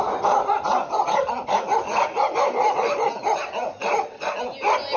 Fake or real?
real